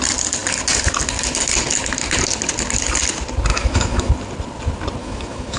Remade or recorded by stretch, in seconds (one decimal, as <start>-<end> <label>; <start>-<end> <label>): 0.0-3.5 recorded; 3.5-4.1 remade; 4.1-5.0 recorded; 5.0-5.6 remade